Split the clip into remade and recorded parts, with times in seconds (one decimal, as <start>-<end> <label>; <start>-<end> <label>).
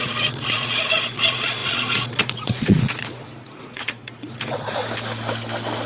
0.0-4.8 remade; 4.8-5.9 recorded